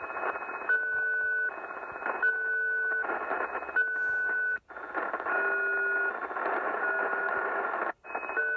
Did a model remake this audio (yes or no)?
no